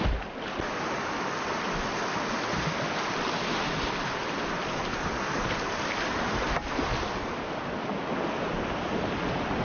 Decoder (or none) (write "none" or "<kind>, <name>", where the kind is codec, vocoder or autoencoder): none